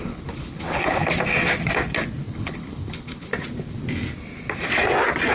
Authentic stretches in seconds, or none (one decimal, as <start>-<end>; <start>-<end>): 1.0-2.3; 3.3-5.3